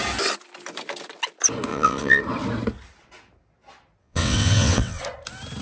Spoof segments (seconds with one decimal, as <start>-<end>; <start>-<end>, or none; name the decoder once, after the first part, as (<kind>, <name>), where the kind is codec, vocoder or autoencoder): 1.7-2.2 (vocoder, WaveNeXt); 4.0-5.0